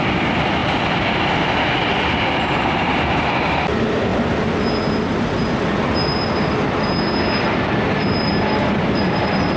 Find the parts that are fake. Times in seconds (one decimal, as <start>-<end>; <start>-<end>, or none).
0.0-4.1; 7.7-9.6